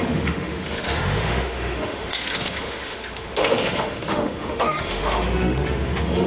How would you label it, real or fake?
fake